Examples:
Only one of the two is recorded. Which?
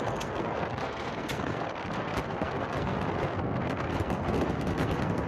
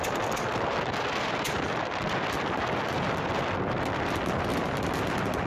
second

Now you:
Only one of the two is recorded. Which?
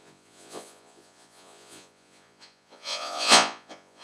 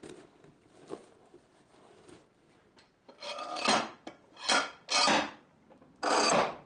second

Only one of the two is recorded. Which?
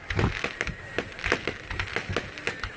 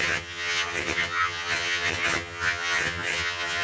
first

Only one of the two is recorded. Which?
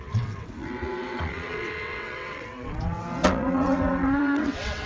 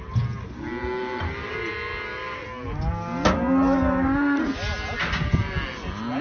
second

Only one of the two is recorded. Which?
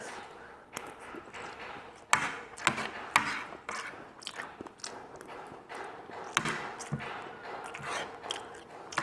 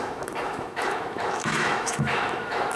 first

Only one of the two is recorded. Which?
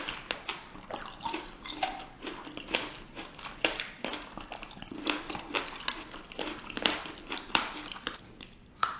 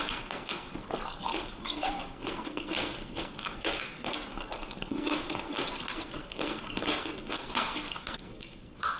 first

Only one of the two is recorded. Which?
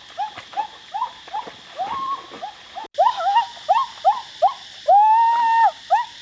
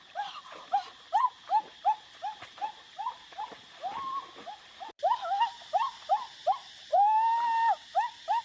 first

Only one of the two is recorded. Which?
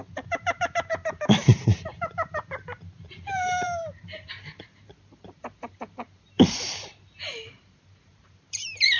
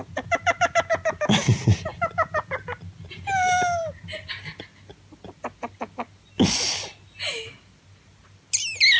second